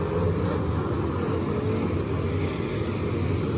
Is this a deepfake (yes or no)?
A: no